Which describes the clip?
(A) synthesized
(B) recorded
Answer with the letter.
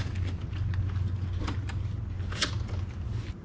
B